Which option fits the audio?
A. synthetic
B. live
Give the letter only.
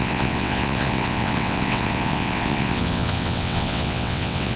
A